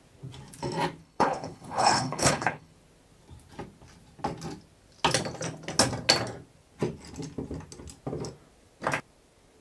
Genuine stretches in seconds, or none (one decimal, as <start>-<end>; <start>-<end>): 0.0-1.0; 2.7-9.6